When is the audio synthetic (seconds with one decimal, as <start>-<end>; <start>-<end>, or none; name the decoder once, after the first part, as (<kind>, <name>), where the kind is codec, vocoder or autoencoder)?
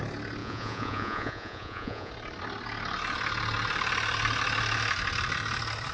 0.4-2.1 (vocoder, Vocos)